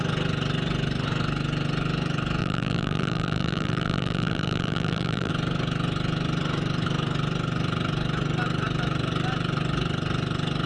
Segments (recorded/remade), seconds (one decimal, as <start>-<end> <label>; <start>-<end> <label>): 0.0-2.4 recorded; 2.4-5.3 remade; 5.3-10.7 recorded